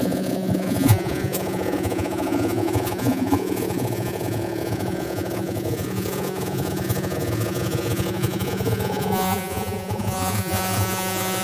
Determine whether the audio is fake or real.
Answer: fake